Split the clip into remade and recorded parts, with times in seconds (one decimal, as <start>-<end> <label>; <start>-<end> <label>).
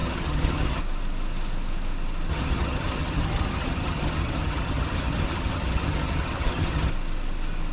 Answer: 0.0-0.8 remade; 0.8-2.3 recorded; 2.3-6.9 remade; 6.9-7.7 recorded